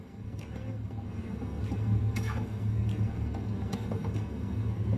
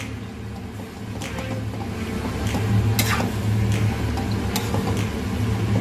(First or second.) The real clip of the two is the second